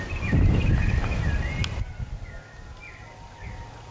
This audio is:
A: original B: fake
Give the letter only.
A